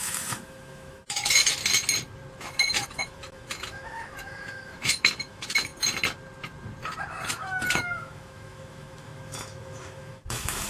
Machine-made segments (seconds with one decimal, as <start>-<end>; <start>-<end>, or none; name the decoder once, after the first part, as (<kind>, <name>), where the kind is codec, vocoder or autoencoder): 0.0-1.6 (autoencoder, DAC-VAE); 2.4-5.7; 7.3-10.7